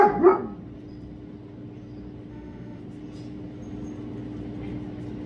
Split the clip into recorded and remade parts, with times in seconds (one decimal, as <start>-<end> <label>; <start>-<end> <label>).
0.0-2.3 recorded; 2.3-2.8 remade; 2.8-5.3 recorded